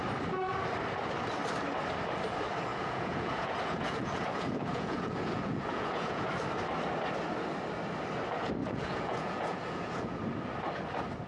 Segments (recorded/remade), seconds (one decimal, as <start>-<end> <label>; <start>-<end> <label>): 0.0-2.7 recorded; 2.7-6.3 remade; 6.3-8.6 recorded; 8.6-10.2 remade; 10.2-11.3 recorded